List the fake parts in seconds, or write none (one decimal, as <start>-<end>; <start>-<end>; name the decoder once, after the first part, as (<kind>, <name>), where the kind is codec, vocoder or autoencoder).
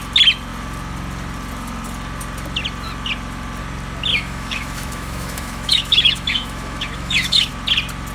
4.1-7.5 (autoencoder, DAC-VAE)